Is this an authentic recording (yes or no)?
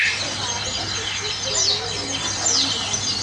yes